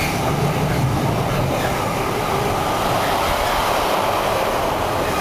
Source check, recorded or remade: recorded